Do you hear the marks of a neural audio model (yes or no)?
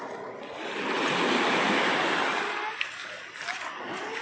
no